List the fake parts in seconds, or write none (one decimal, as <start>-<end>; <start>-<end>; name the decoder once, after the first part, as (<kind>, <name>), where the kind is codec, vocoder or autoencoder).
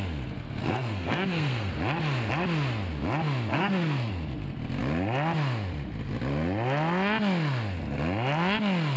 0.6-1.7 (codec, SNAC); 3.5-4.1